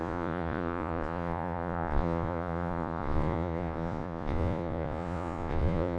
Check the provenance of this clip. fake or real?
fake